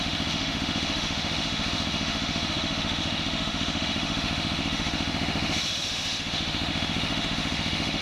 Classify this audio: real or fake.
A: fake